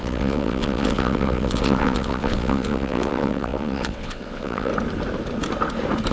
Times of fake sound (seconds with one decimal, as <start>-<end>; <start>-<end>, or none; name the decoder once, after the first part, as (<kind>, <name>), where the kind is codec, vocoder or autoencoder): 0.0-4.7 (vocoder, WaveNeXt)